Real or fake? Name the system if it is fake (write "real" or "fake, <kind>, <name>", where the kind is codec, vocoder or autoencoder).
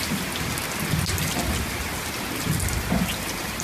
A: real